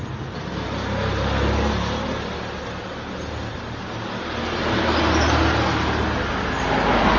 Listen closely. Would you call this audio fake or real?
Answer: real